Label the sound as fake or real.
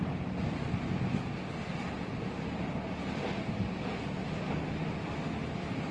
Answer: real